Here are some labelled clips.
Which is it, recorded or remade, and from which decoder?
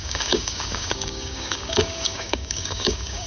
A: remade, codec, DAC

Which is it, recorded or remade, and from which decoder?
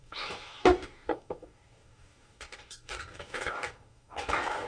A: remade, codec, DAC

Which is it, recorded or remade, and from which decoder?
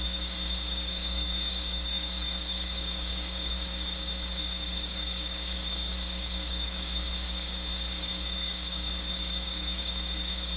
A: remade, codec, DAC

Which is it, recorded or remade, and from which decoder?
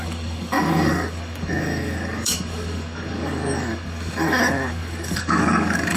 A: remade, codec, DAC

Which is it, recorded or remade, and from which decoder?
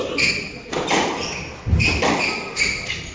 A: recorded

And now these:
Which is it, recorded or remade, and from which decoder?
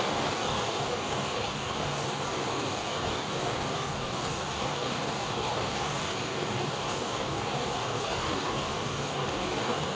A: remade, codec, DAC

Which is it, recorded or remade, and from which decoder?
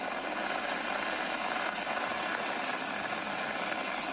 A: recorded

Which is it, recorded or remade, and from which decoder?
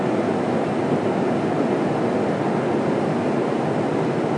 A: recorded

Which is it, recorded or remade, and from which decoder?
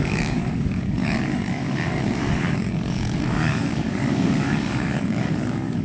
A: remade, codec, DAC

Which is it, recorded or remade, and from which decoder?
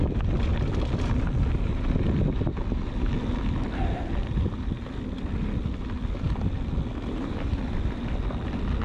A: recorded